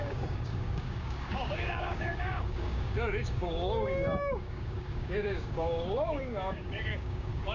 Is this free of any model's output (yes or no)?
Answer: no